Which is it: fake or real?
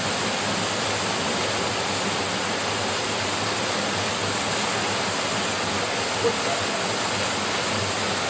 real